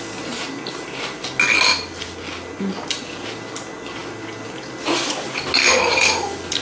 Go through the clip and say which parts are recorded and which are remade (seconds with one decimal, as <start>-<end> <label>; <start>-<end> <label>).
0.0-6.6 recorded